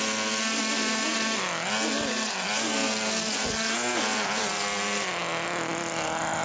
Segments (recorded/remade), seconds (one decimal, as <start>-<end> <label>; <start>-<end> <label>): 0.0-6.4 recorded